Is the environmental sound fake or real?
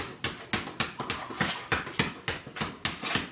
real